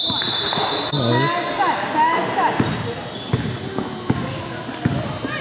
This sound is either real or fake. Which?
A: real